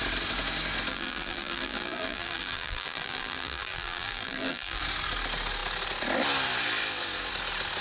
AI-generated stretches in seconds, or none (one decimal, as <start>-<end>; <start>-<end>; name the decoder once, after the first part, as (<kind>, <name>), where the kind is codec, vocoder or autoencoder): 0.9-4.8 (vocoder, BigVGAN v2)